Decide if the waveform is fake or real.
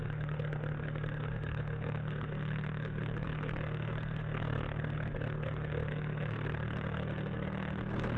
fake